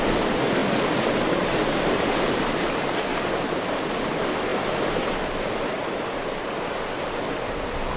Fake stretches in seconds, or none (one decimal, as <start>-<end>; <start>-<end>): none